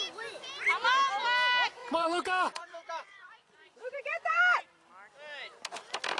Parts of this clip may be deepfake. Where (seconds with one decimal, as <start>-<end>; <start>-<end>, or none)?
1.8-4.4